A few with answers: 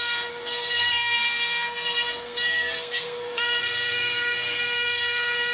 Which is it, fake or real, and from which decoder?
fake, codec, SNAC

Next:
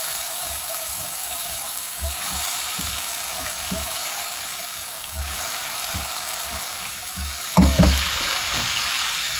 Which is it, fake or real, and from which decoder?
fake, codec, DAC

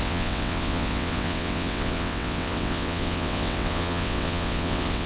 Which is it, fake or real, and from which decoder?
fake, vocoder, WaveNeXt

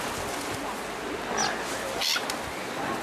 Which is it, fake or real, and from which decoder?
real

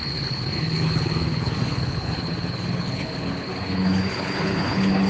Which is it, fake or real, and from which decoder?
fake, codec, HILCodec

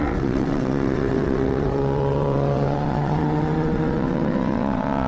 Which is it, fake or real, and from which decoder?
fake, vocoder, WaveNeXt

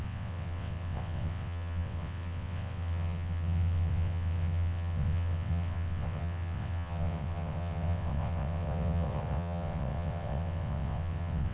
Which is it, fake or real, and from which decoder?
fake, vocoder, WaveNeXt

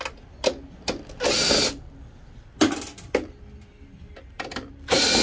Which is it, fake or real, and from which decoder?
real